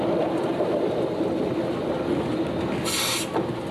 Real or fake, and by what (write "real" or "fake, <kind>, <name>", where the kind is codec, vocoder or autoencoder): real